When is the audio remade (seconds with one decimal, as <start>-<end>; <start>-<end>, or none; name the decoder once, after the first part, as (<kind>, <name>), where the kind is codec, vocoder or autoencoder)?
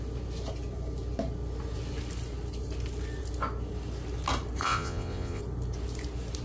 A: 4.6-5.4 (vocoder, Vocos)